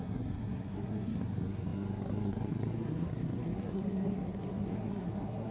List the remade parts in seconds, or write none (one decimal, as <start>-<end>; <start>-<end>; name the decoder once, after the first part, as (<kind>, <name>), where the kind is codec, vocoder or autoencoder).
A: 0.0-5.5 (codec, SNAC)